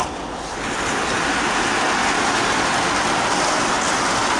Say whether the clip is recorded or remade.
recorded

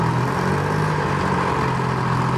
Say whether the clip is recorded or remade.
recorded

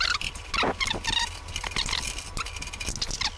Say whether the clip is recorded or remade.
recorded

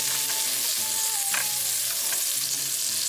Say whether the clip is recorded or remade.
recorded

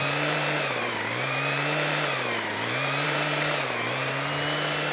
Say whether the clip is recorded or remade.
remade